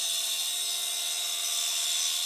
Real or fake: real